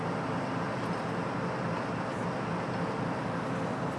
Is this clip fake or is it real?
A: real